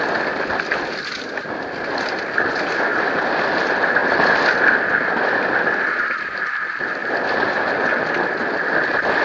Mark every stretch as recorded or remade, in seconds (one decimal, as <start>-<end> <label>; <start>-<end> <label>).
0.0-4.0 remade; 4.0-4.5 recorded; 4.5-9.2 remade